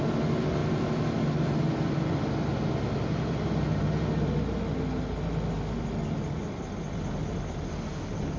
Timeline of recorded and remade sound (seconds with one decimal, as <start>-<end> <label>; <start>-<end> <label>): 0.0-8.4 recorded